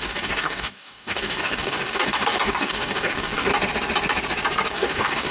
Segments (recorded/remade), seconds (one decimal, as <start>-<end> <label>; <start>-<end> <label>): 0.0-3.5 remade; 3.5-4.7 recorded; 4.7-5.3 remade